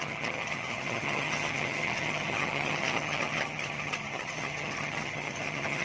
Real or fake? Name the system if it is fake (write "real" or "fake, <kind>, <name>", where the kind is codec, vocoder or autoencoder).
fake, vocoder, HiFi-GAN